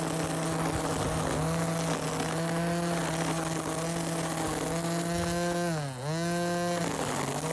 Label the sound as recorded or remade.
recorded